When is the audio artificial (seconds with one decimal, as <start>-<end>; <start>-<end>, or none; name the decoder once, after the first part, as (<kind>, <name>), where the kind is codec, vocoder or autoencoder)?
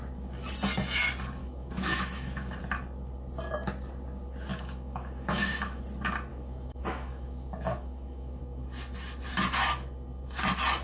1.4-2.6 (autoencoder, DAC-VAE); 4.5-5.8; 6.3-8.4